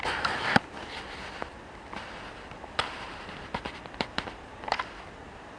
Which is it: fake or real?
fake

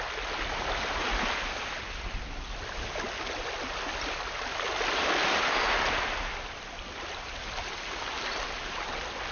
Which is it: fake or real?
real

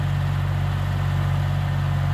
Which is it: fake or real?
real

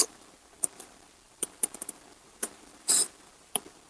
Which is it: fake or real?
fake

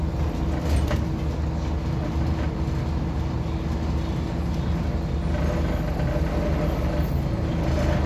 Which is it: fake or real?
real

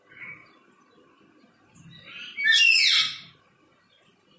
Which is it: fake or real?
real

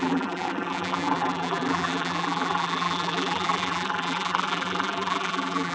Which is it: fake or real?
fake